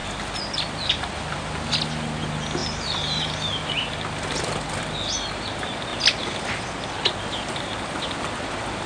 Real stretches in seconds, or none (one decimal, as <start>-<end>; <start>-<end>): 1.7-2.6; 4.8-8.9